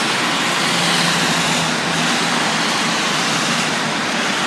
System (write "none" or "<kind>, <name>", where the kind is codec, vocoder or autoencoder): none